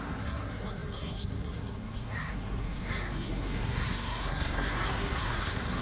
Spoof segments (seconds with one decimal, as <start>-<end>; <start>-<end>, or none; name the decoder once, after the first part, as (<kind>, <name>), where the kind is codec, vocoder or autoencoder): 0.0-5.8 (codec, SNAC)